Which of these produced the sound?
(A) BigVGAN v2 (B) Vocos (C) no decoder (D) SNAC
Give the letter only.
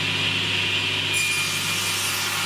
C